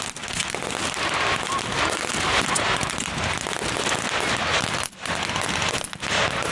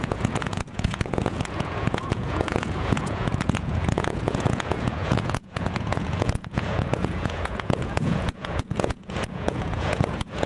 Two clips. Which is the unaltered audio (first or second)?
first